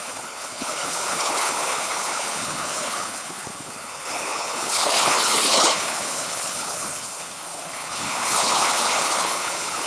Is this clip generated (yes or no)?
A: yes